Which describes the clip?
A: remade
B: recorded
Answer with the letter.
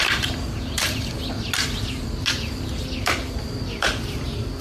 B